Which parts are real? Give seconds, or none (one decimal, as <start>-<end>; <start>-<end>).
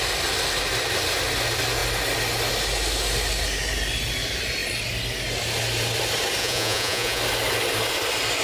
0.0-6.4; 7.2-8.4